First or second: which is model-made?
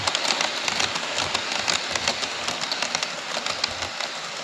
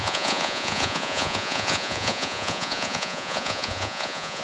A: second